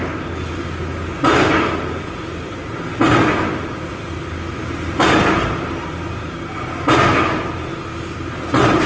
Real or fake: real